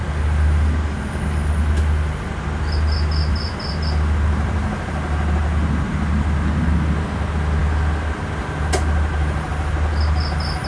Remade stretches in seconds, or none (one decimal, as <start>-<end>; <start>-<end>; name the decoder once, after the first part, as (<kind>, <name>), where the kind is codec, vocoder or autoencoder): none